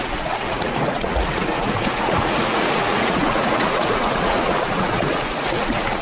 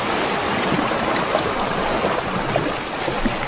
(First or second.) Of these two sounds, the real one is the second